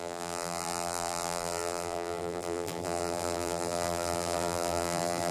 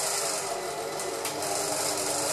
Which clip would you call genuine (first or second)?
second